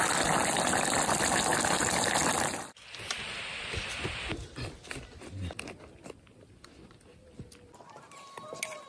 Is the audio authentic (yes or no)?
yes